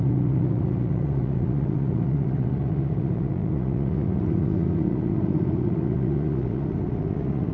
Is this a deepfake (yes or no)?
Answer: yes